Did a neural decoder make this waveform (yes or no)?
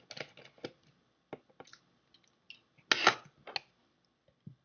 no